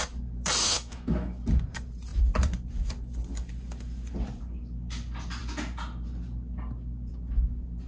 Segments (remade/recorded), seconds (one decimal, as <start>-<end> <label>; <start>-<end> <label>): 0.0-0.6 recorded; 0.6-1.4 remade; 1.4-7.9 recorded